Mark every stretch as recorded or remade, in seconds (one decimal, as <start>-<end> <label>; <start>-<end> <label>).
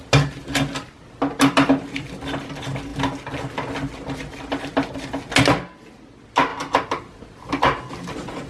0.0-8.5 recorded